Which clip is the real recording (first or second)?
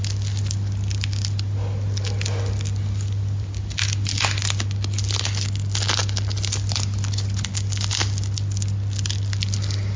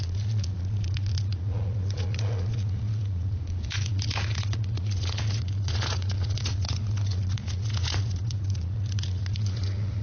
first